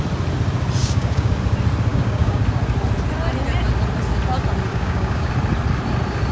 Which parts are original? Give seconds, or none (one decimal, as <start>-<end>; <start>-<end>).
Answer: 0.0-0.8; 1.3-1.9; 2.4-4.7; 5.3-6.3